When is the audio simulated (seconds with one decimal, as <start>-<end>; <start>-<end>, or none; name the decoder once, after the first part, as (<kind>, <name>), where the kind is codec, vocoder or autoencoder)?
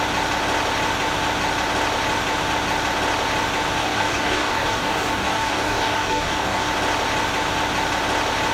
3.8-6.7 (codec, DAC)